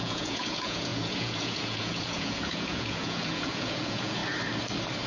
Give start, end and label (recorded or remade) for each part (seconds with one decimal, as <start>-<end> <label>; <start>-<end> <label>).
0.0-4.2 remade; 4.2-5.1 recorded